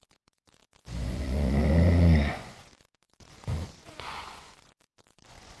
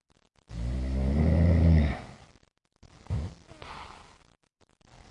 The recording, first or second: second